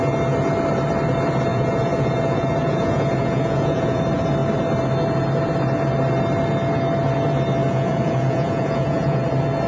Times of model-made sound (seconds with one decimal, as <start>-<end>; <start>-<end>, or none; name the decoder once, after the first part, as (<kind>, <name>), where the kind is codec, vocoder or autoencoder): 1.5-4.0 (vocoder, Vocos); 7.6-9.2